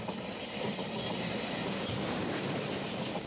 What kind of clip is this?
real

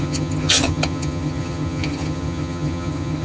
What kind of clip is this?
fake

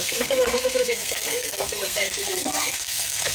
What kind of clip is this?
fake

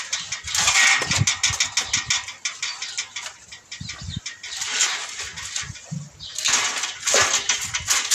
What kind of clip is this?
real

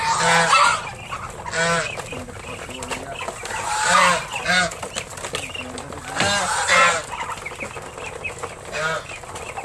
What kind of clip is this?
real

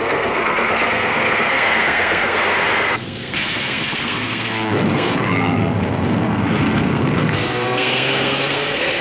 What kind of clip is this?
fake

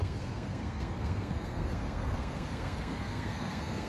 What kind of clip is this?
fake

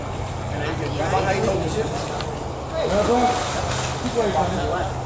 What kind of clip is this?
real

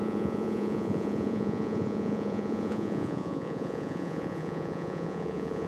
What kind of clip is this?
fake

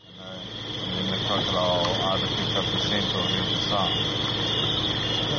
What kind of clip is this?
real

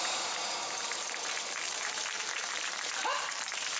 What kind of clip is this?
fake